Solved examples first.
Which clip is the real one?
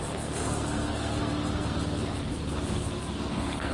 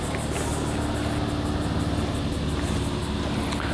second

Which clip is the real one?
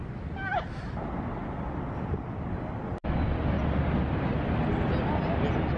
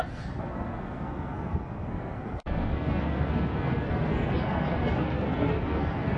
first